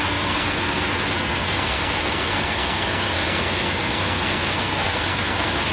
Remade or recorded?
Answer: remade